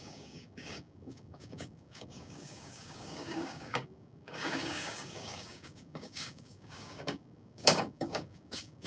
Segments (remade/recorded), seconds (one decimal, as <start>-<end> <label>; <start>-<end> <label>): 0.0-8.9 remade